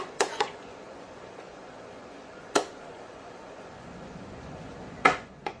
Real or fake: fake